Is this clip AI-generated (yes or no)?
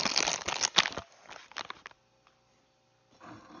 no